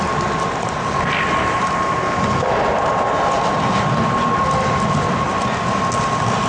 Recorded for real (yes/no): yes